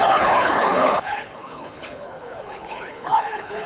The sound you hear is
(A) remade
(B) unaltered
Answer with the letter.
A